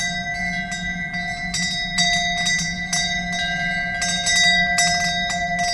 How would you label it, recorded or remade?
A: recorded